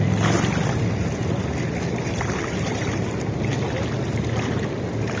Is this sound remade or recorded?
recorded